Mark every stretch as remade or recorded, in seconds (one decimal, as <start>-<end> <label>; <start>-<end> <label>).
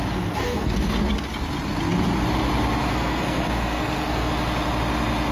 0.0-0.4 recorded; 0.4-1.1 remade; 1.1-2.9 recorded; 2.9-4.3 remade; 4.3-5.3 recorded